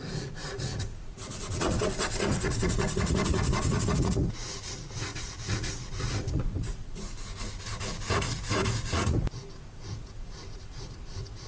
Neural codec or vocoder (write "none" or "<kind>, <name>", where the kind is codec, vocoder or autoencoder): vocoder, Vocos